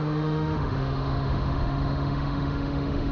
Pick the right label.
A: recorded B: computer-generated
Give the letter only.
B